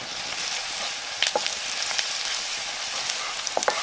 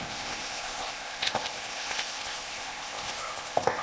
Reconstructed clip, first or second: second